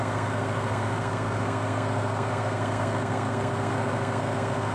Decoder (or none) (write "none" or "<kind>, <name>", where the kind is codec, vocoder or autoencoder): codec, SNAC